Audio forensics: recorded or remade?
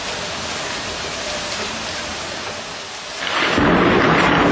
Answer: recorded